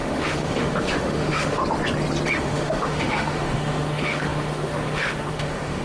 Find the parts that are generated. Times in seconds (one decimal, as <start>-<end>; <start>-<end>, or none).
0.0-1.6; 2.4-5.8